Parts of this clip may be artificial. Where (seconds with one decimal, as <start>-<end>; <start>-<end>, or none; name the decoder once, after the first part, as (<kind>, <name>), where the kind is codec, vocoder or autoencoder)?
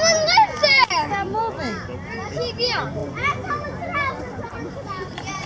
0.6-1.4 (vocoder, BigVGAN v2)